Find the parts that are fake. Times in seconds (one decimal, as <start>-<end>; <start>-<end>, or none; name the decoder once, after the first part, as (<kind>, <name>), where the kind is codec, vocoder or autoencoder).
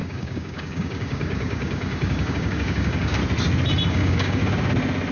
0.0-3.2 (codec, DAC); 3.9-4.4